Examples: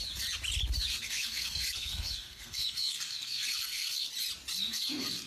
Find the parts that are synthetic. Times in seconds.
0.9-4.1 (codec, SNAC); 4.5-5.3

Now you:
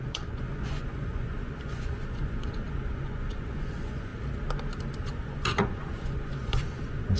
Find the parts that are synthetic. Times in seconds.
0.0-4.1 (vocoder, Vocos); 4.9-7.2

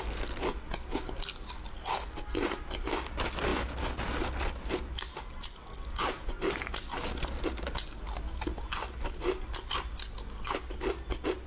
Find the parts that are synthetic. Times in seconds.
none

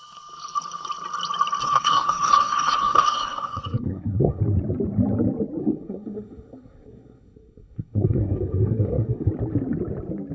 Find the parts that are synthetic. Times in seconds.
1.6-4.4 (codec, SNAC); 5.6-9.3

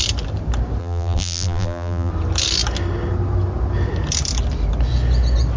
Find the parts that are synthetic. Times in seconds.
0.8-2.1 (vocoder, BigVGAN v2)

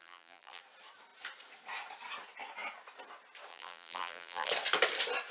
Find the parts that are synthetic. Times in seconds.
0.0-0.6 (vocoder, BigVGAN v2); 3.5-4.5

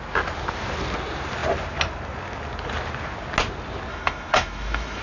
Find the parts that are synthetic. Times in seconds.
3.9-5.0 (autoencoder, DAC-VAE)